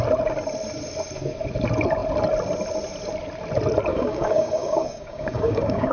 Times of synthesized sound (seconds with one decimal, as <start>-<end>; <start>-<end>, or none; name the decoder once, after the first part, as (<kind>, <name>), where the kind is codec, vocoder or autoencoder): 3.9-5.9 (codec, DAC)